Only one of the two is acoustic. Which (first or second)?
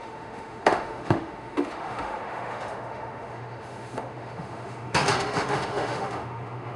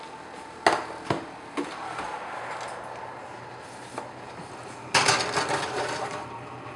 second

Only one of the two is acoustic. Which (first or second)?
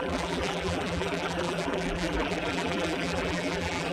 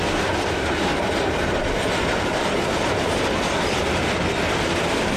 second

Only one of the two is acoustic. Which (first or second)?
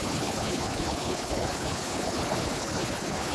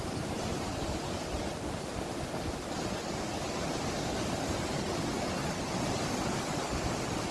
second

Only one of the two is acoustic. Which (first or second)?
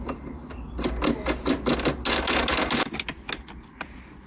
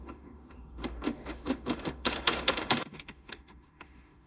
first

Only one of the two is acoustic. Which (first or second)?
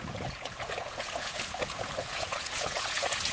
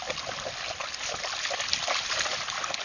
second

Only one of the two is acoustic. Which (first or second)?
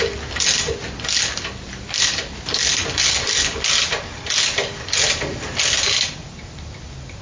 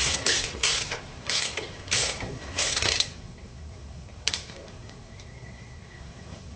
first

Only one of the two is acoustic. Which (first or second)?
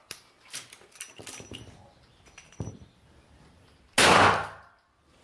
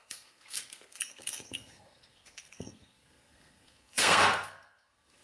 first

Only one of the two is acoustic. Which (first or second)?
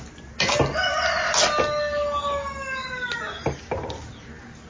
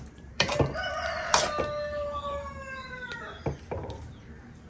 first